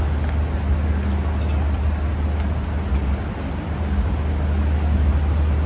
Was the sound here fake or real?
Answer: real